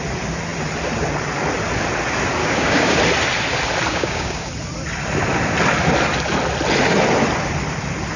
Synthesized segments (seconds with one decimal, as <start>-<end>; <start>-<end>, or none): 2.4-3.0; 3.9-4.5